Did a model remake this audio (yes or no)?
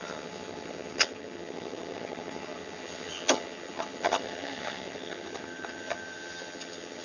yes